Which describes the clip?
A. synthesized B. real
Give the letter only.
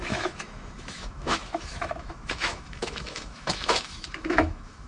A